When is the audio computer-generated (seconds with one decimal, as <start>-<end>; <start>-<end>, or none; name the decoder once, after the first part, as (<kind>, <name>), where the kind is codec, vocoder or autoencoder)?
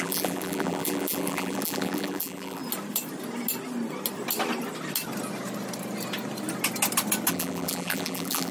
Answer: 0.0-2.6 (vocoder, BigVGAN v2); 7.3-8.5